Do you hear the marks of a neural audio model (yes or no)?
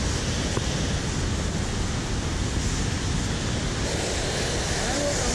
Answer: no